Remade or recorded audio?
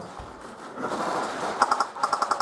recorded